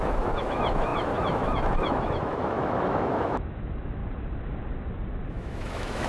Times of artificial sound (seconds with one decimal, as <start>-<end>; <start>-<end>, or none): 0.0-4.0; 5.3-6.1